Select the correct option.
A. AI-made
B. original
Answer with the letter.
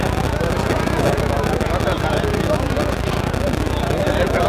B